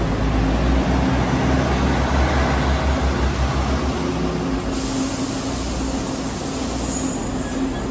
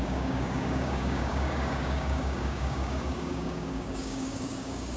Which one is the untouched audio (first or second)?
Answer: first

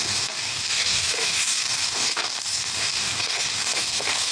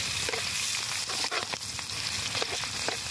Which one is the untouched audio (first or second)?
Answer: second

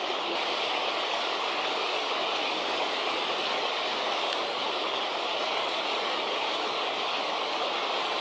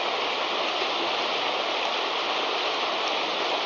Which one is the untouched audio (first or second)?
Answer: second